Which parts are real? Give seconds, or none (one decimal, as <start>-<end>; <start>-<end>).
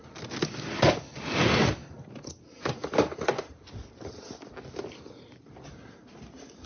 0.0-6.7